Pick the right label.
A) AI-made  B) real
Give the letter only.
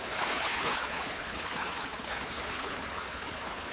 A